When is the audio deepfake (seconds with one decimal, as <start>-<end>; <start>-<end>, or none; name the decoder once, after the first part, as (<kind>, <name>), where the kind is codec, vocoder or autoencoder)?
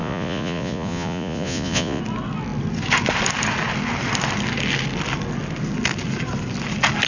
0.0-2.0 (vocoder, Vocos)